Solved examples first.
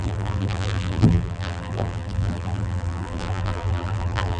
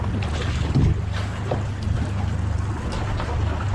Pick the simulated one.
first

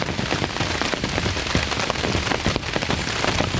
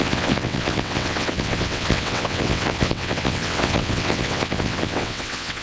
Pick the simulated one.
second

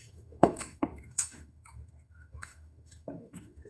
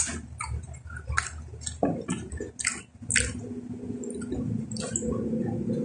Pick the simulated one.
first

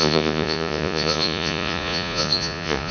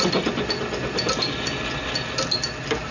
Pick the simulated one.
first